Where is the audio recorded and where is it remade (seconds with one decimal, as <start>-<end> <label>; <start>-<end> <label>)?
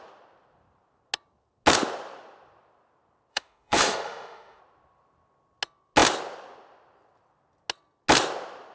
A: 0.0-3.3 recorded; 3.3-4.6 remade; 4.6-8.7 recorded